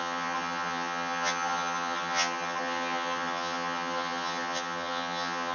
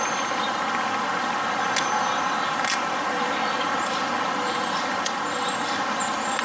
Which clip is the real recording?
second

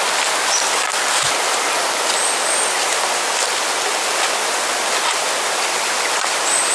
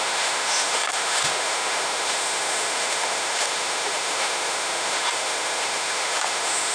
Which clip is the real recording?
first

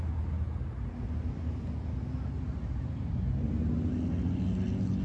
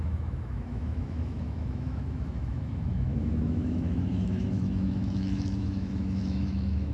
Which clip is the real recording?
first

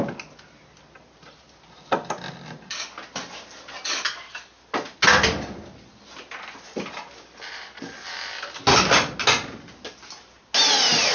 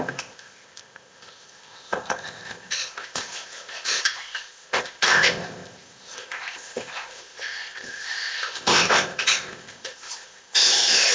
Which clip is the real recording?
first